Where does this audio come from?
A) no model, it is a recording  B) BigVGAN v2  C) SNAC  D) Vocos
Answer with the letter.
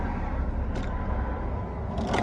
A